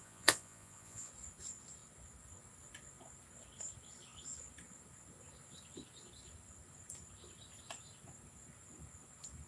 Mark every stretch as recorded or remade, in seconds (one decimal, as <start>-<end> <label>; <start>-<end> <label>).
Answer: 0.0-1.1 remade; 1.1-9.5 recorded